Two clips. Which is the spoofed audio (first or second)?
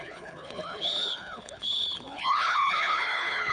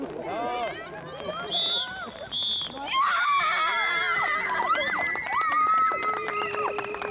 first